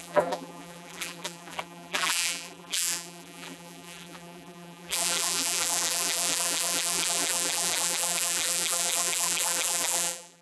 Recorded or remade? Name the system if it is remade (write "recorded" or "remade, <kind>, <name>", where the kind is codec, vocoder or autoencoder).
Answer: remade, vocoder, BigVGAN v2